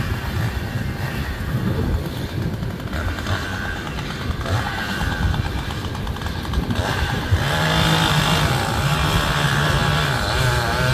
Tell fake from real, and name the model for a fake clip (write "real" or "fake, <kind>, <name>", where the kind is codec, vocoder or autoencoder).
real